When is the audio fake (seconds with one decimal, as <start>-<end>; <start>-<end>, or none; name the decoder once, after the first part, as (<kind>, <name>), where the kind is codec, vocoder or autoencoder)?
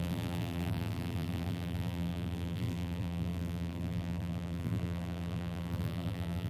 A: 0.0-6.5 (vocoder, BigVGAN v2)